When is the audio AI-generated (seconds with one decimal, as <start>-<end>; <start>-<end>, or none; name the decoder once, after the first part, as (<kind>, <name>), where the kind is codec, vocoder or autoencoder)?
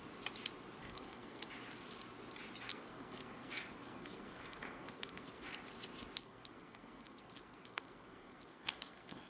0.8-1.5 (codec, SNAC); 2.7-5.5; 6.2-9.3